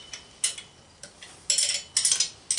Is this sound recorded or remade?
recorded